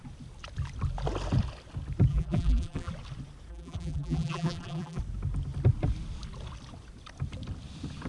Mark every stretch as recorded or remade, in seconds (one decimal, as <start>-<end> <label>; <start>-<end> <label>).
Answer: 0.0-2.1 recorded; 2.1-2.9 remade; 2.9-3.5 recorded; 3.5-5.0 remade; 5.0-8.1 recorded